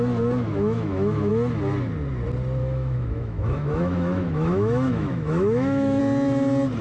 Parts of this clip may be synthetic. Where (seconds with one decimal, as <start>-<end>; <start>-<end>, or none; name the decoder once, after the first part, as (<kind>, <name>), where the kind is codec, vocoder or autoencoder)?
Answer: 0.5-1.3 (autoencoder, DAC-VAE); 2.6-6.0